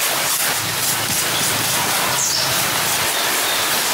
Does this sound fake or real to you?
real